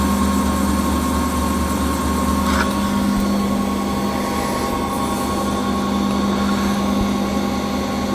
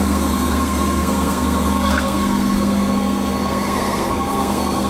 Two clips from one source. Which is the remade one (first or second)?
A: second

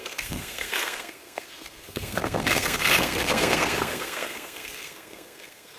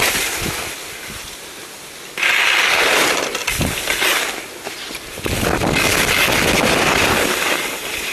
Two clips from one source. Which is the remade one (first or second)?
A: first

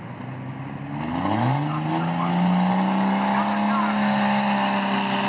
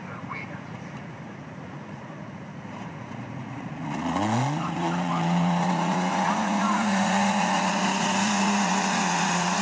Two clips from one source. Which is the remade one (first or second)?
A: second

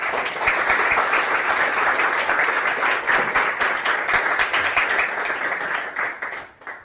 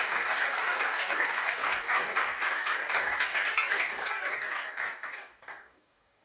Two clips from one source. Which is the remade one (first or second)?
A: second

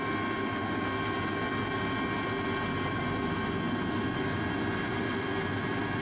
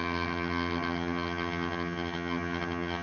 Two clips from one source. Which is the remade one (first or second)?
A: second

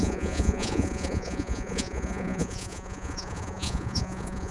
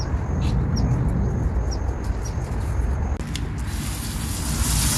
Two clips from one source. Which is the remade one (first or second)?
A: first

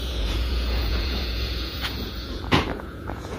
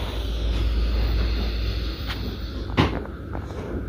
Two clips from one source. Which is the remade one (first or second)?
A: first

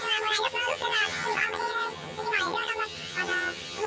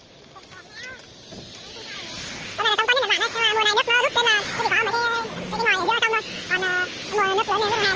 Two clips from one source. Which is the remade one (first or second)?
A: first